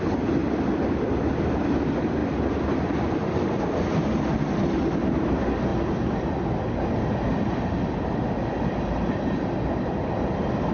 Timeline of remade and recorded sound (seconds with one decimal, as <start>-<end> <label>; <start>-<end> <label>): 0.0-2.2 recorded; 2.2-3.6 remade; 3.6-10.7 recorded